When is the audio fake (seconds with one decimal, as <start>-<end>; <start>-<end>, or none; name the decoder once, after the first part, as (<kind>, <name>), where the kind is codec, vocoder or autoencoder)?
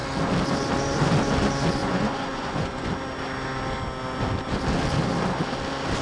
1.8-2.9 (vocoder, Vocos)